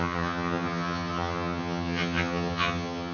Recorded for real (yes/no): no